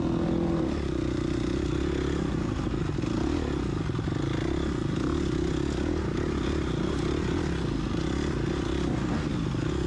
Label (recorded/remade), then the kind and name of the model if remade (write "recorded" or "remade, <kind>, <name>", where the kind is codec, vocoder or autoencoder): recorded